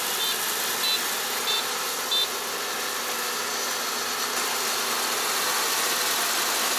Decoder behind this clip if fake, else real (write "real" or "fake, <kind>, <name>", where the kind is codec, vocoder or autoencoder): real